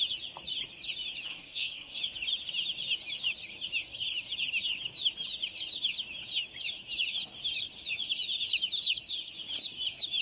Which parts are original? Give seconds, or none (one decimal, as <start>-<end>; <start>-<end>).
0.0-1.3; 2.0-10.2